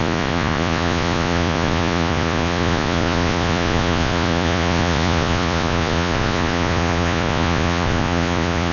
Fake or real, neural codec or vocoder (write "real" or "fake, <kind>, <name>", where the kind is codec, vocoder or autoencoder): fake, vocoder, Vocos